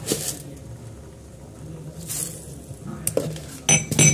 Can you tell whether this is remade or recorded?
recorded